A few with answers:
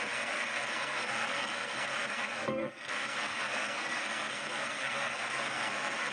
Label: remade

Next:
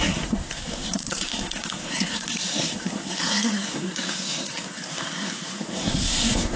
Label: remade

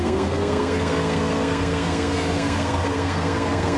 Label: remade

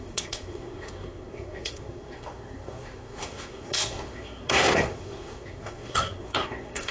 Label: remade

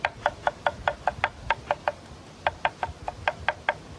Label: recorded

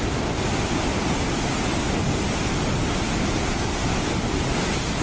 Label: recorded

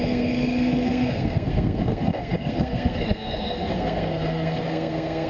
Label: remade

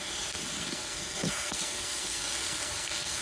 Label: remade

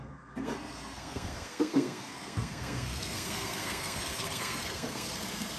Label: remade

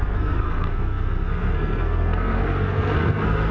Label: remade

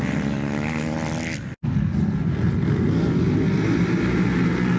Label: recorded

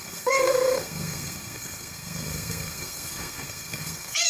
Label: remade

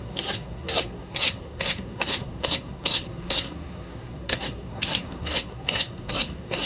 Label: remade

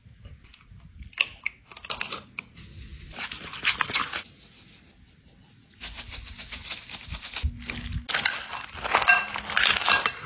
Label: recorded